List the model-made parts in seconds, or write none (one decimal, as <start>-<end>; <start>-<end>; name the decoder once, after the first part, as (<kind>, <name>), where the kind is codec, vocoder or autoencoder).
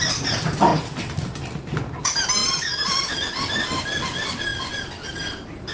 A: 2.4-3.1 (vocoder, BigVGAN v2)